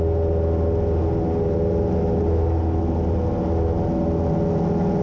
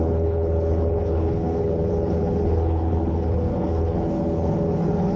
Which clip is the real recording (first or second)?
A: first